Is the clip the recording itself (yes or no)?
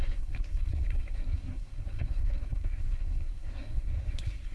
no